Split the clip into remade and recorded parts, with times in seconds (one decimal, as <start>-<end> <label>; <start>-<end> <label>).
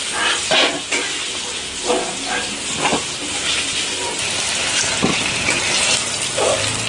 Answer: 0.0-6.9 recorded